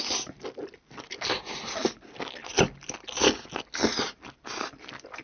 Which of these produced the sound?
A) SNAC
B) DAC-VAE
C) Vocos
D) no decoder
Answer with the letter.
D